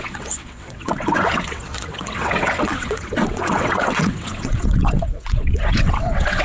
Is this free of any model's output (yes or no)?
no